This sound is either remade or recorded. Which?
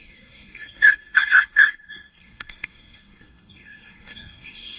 remade